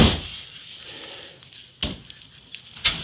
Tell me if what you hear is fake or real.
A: real